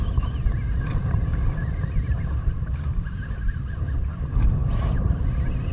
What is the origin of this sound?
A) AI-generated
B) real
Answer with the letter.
B